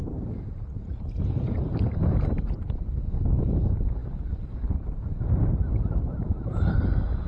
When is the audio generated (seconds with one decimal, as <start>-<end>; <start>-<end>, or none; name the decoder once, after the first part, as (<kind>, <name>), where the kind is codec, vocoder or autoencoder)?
0.0-7.3 (vocoder, BigVGAN v2)